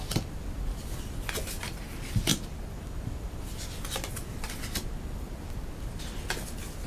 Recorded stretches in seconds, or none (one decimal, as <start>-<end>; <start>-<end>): 0.0-2.3; 3.4-6.9